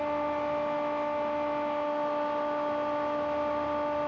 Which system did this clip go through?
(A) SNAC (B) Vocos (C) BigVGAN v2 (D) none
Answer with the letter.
D